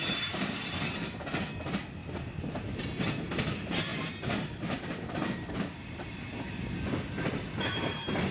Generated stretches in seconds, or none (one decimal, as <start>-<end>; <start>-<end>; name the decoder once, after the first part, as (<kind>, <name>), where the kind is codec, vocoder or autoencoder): 3.9-5.6 (vocoder, BigVGAN v2)